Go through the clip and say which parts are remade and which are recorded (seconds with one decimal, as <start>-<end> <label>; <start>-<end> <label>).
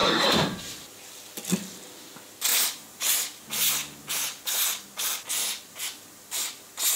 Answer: 0.0-1.0 remade; 1.0-2.5 recorded; 2.5-3.1 remade; 3.1-7.0 recorded